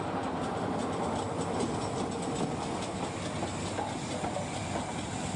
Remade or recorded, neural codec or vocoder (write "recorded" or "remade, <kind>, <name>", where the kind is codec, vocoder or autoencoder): recorded